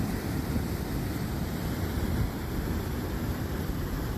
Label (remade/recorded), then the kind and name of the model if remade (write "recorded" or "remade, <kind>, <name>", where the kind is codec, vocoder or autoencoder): remade, vocoder, BigVGAN v2